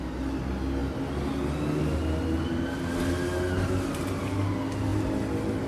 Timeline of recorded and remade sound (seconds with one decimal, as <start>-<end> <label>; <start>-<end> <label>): 0.0-5.7 recorded